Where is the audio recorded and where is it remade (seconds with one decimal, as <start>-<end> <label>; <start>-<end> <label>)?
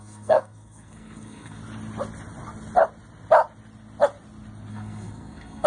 0.0-1.6 remade; 1.6-4.7 recorded; 4.7-5.7 remade